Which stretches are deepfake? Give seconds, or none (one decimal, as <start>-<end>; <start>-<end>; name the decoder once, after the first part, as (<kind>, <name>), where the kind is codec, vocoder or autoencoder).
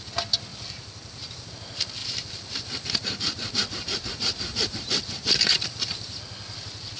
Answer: 0.5-1.5 (vocoder, BigVGAN v2); 2.0-6.2